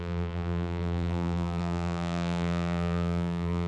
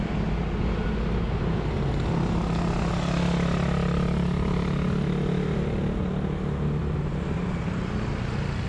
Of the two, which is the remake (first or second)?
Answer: first